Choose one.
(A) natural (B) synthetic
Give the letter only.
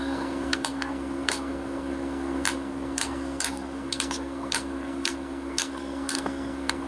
B